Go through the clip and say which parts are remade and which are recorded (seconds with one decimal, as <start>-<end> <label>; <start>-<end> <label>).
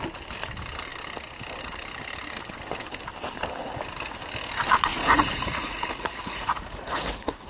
0.0-4.9 recorded; 4.9-7.5 remade